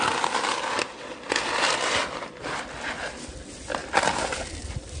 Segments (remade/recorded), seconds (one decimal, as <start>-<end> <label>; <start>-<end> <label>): 0.0-2.0 recorded; 2.0-2.7 remade; 2.7-3.8 recorded; 3.8-4.6 remade; 4.6-5.0 recorded

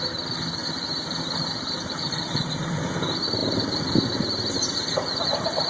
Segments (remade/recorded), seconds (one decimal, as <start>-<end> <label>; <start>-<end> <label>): 0.0-5.7 recorded